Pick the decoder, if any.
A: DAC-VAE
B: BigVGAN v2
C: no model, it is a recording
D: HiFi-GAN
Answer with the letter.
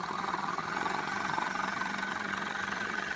D